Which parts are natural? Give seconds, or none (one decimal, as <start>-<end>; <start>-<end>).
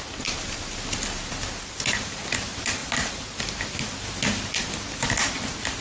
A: 0.0-5.8